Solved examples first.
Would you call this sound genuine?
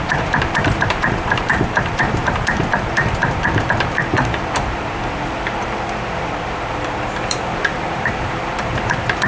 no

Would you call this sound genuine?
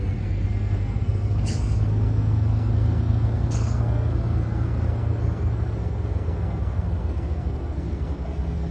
no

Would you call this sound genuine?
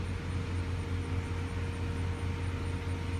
yes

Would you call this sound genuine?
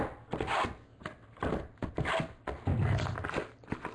yes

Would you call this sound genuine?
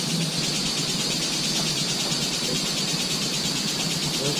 no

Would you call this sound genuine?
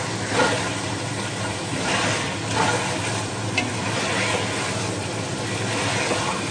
yes